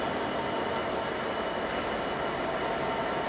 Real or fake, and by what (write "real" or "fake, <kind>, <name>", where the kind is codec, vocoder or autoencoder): real